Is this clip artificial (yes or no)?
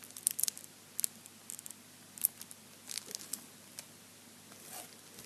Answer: no